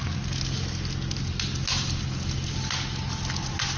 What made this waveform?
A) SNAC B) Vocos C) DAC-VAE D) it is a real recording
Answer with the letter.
D